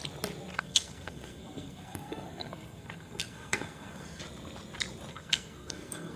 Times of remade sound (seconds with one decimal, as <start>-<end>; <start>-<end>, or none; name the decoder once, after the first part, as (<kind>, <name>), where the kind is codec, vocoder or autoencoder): 0.5-4.2 (codec, SNAC); 5.1-6.2

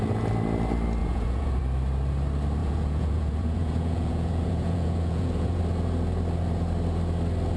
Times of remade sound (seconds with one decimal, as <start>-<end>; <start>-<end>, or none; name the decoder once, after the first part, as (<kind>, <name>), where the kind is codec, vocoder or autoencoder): 1.0-1.6 (vocoder, Vocos); 2.6-5.6

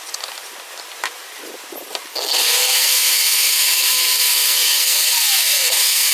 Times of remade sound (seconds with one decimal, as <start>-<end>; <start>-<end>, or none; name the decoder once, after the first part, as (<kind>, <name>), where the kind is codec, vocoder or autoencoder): 2.1-6.1 (codec, SNAC)

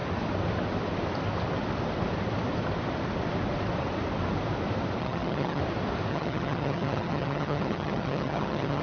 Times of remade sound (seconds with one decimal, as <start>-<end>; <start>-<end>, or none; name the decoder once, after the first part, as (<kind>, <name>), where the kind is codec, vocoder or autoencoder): 5.0-5.6 (vocoder, HiFi-GAN); 6.1-8.8

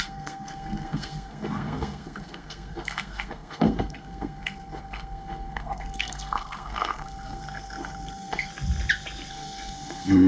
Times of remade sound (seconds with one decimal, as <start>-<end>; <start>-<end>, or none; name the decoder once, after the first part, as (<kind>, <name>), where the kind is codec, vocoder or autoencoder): 0.0-8.5 (codec, SNAC); 9.3-10.3

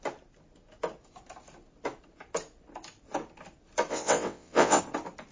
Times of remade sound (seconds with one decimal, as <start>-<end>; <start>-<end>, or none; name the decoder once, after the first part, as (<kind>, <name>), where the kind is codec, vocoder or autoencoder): 3.9-4.8 (vocoder, WaveNeXt)